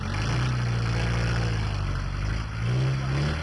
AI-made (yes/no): no